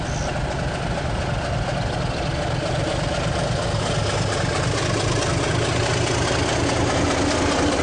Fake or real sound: real